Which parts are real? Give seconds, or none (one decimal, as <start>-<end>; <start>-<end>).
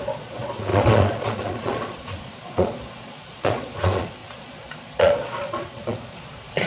none